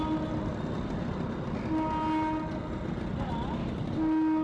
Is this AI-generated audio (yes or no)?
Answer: no